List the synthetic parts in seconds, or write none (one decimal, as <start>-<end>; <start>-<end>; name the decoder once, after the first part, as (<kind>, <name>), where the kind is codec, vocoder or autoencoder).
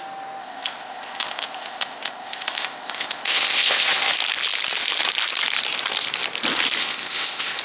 0.4-4.1 (codec, ZipCodec); 6.8-7.6